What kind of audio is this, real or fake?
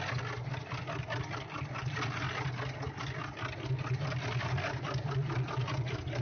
real